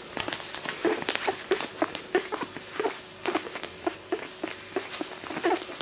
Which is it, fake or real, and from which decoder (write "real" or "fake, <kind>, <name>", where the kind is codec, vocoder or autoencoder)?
real